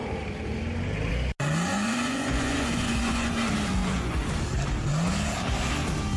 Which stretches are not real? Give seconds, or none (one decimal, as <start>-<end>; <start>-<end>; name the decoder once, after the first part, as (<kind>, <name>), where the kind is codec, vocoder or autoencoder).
1.7-3.3 (vocoder, Vocos); 3.8-4.3